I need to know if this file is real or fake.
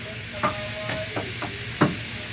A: fake